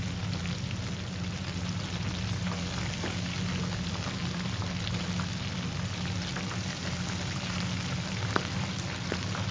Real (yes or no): yes